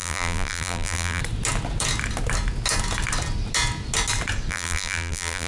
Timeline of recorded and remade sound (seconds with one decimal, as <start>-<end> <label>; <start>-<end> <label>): 0.0-1.2 remade; 1.2-4.5 recorded; 4.5-5.5 remade

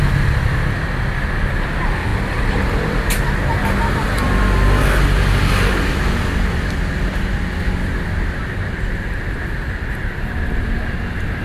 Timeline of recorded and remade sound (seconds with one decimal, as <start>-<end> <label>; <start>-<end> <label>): 0.0-11.4 recorded

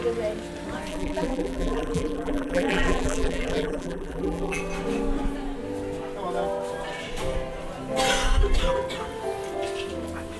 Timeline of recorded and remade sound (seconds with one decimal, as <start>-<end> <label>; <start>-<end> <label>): 0.0-0.9 recorded; 0.9-4.6 remade; 4.6-10.4 recorded

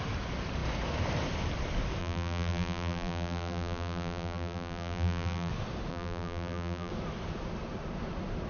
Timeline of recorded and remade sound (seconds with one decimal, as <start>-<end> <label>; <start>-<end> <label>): 0.0-2.0 recorded; 2.0-5.5 remade; 5.5-5.9 recorded; 5.9-6.9 remade; 6.9-8.5 recorded

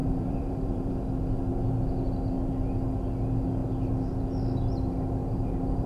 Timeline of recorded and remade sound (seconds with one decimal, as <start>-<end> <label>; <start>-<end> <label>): 0.0-0.9 remade; 0.9-5.2 recorded; 5.2-5.9 remade

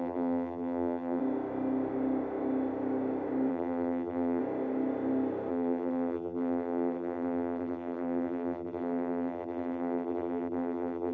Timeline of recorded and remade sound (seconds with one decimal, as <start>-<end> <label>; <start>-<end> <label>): 0.0-1.2 remade; 1.2-3.5 recorded; 3.5-4.4 remade; 4.4-5.5 recorded; 5.5-11.1 remade

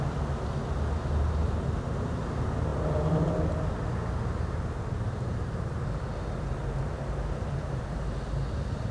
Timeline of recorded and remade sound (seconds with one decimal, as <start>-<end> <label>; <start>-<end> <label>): 0.0-2.7 recorded; 2.7-5.6 remade; 5.6-6.6 recorded; 6.6-8.0 remade; 8.0-8.9 recorded